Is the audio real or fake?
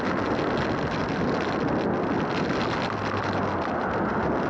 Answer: real